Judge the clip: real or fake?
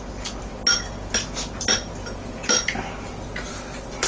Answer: real